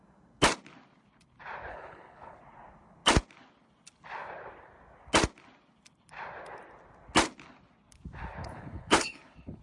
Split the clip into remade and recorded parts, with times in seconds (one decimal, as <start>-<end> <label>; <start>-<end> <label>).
0.0-1.7 recorded; 1.7-2.4 remade; 2.4-8.4 recorded; 8.4-9.6 remade